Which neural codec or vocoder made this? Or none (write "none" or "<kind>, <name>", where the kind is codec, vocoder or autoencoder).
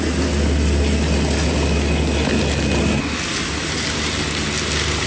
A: none